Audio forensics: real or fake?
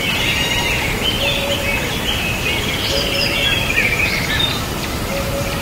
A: real